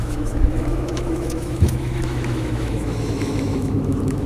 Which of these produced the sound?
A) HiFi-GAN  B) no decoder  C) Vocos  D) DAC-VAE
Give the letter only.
D